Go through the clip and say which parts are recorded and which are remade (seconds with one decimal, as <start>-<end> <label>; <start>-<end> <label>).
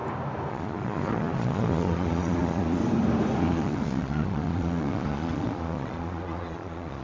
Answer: 0.0-0.5 recorded; 0.5-2.8 remade; 2.8-3.4 recorded; 3.4-7.0 remade